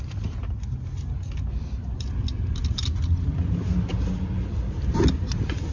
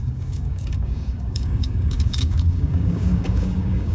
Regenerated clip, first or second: second